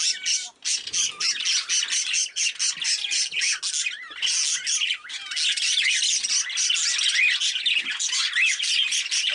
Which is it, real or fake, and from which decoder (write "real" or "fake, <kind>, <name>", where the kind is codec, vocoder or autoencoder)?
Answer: real